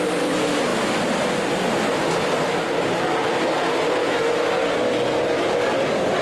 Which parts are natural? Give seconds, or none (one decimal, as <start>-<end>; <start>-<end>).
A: 0.0-4.0; 4.5-6.2

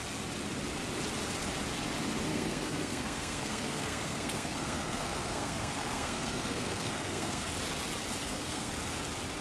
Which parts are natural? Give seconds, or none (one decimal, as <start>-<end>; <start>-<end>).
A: 0.0-2.3; 7.5-8.2; 8.7-9.4

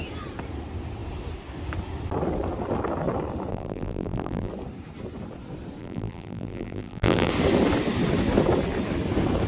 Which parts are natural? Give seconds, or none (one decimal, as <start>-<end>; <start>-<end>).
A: 0.0-3.5; 4.5-5.8; 7.3-9.5

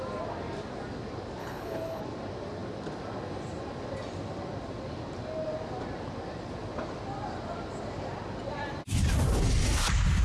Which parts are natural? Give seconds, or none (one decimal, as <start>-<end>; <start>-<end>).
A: 0.0-1.4; 2.0-10.2

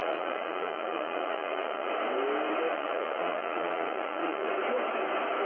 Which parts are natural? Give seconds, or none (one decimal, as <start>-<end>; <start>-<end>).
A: 1.9-2.7; 4.5-5.5